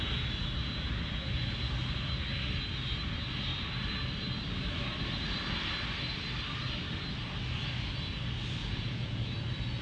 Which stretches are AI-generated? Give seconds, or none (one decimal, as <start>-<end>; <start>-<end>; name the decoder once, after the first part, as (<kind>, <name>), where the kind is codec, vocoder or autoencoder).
8.6-9.3 (vocoder, Vocos)